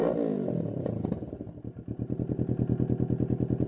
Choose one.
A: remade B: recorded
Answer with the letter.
B